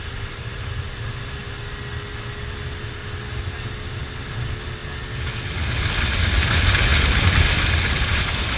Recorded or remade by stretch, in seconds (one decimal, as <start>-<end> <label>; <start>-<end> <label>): 0.0-8.6 recorded